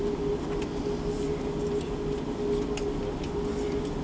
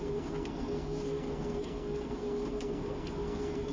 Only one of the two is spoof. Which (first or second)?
second